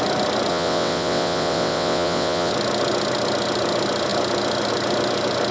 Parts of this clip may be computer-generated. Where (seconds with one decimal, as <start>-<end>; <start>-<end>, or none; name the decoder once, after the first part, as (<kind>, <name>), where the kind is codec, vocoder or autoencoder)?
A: 0.5-2.5 (vocoder, WaveNeXt)